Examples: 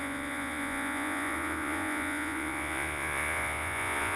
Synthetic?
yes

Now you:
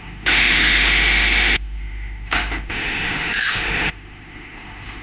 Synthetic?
yes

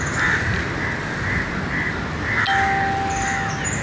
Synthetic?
no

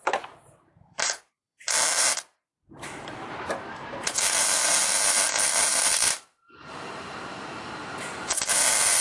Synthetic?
yes